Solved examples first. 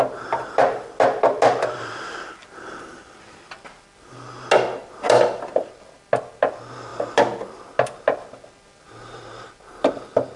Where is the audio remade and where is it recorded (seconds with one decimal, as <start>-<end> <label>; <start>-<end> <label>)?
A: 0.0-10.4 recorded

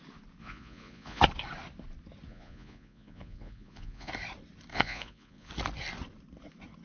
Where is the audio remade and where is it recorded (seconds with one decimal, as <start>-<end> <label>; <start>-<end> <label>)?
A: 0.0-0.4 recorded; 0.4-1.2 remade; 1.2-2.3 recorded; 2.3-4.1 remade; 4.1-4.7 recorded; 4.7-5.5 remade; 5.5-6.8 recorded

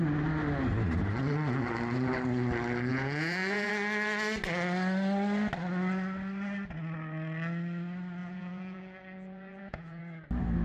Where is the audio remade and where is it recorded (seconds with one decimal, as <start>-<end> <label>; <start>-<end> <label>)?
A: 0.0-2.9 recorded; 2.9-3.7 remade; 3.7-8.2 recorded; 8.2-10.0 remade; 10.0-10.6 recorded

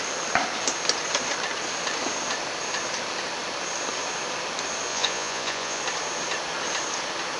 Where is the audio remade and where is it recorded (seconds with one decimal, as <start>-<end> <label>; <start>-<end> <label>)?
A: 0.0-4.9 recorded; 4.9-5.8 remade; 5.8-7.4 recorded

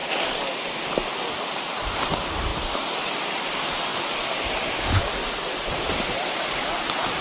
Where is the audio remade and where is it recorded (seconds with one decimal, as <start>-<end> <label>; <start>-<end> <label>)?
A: 0.0-7.2 recorded